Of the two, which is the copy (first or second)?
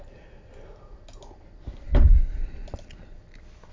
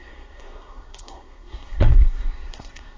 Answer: second